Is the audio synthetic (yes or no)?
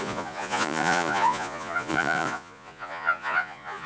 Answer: yes